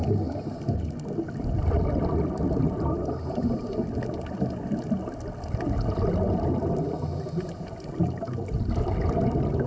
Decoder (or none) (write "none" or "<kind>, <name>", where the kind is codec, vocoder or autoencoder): none